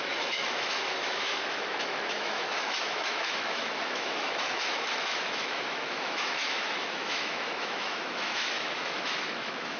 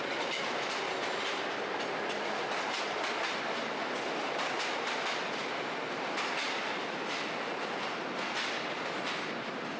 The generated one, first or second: first